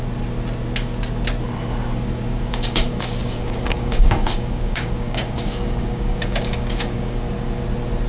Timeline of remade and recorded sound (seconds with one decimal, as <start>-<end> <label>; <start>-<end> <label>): 0.0-2.3 recorded; 2.3-7.2 remade; 7.2-8.1 recorded